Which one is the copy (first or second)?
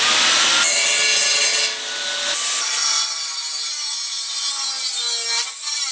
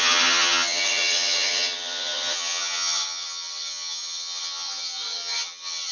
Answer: second